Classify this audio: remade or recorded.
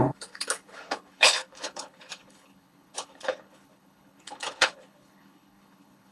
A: remade